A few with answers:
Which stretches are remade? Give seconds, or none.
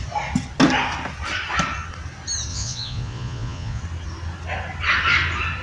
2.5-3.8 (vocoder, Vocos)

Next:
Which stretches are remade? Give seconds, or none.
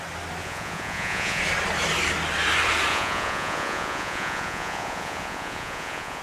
0.4-1.4 (vocoder, Vocos); 2.9-6.2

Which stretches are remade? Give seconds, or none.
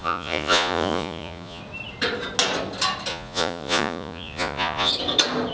0.0-1.6 (vocoder, Vocos); 3.1-4.9